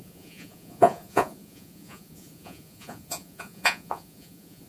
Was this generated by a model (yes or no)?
yes